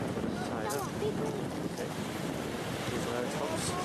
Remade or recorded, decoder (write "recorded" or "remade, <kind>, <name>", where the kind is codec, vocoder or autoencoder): recorded